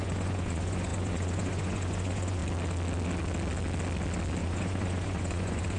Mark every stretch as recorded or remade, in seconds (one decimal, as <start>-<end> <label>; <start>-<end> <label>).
0.0-2.4 remade; 2.4-4.4 recorded; 4.4-5.8 remade